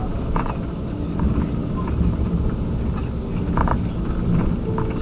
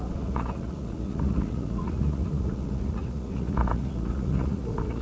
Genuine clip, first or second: first